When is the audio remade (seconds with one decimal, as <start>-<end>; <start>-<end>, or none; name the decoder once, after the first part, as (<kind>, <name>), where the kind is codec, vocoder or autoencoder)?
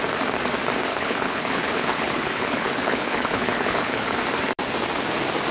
0.9-4.2 (codec, HILCodec)